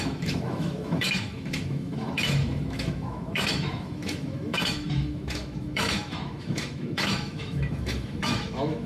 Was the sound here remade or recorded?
remade